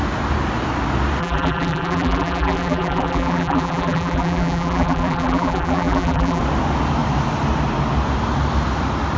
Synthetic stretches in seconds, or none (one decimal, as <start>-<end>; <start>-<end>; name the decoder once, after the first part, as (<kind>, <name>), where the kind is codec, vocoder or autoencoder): 1.2-6.4 (vocoder, BigVGAN v2)